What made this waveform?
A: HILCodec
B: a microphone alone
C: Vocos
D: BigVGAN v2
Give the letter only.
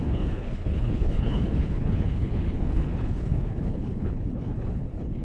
A